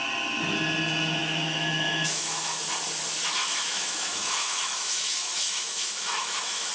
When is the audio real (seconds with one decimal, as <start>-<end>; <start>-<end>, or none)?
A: 0.0-1.2; 2.6-3.4